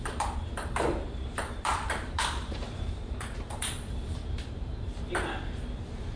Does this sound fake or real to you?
fake